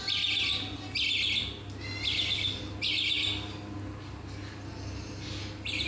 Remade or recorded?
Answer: recorded